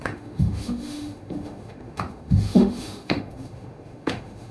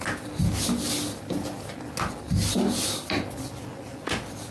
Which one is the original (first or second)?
second